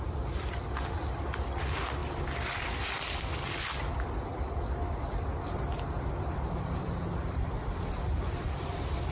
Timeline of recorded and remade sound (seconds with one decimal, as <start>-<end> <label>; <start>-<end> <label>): 0.0-7.0 remade; 7.0-8.4 recorded; 8.4-9.1 remade